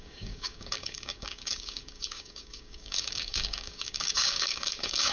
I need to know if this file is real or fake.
fake